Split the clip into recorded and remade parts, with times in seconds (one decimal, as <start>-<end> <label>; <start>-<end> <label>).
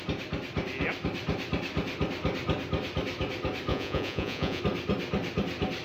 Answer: 0.0-3.7 recorded; 3.7-4.6 remade; 4.6-5.8 recorded